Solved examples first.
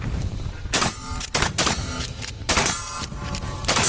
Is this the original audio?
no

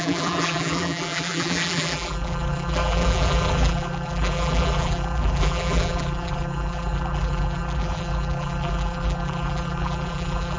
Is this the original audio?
no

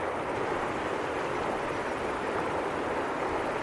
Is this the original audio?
yes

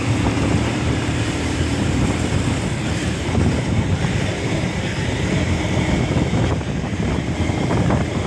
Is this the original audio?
no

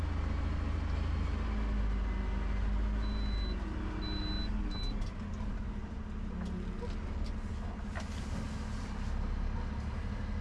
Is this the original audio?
yes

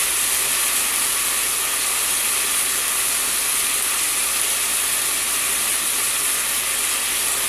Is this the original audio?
yes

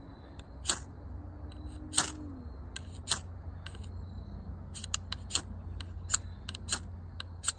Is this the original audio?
yes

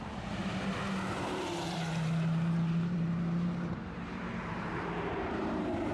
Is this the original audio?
no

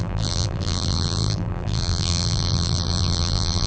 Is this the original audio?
no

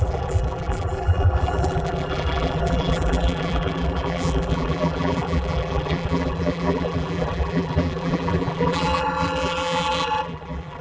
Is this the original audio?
no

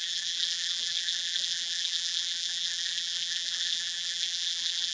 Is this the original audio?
no